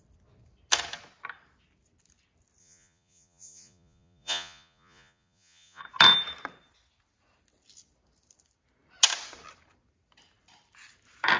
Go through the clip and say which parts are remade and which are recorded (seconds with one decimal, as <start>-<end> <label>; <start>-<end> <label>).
0.0-2.6 recorded; 2.6-5.8 remade; 5.8-11.4 recorded